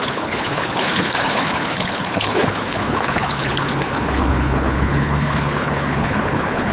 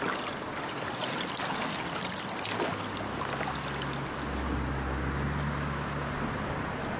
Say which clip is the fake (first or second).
first